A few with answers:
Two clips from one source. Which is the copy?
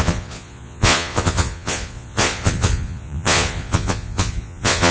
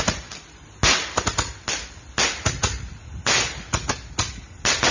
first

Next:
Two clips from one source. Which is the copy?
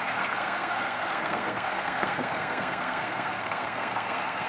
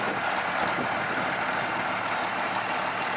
first